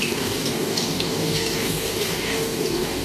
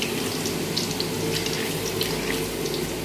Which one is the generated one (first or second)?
first